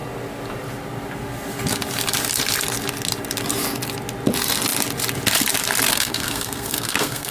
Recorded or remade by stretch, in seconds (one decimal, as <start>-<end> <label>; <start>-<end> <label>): 0.0-5.9 recorded; 5.9-7.3 remade